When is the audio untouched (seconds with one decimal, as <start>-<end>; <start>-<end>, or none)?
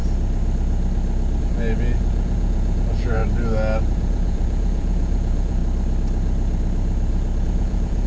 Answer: 0.0-1.4; 3.2-3.9; 5.6-7.4